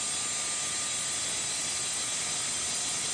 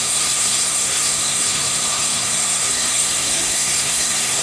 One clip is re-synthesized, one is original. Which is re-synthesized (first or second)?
second